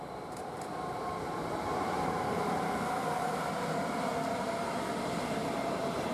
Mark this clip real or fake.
fake